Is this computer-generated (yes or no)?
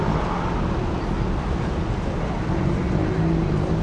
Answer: no